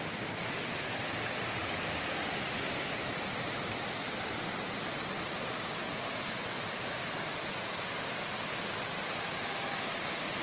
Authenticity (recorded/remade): remade